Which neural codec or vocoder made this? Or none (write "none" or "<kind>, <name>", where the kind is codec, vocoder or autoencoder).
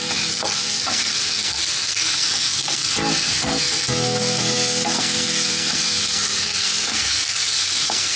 codec, SNAC